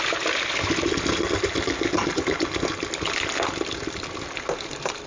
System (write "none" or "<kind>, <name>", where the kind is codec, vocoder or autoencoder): none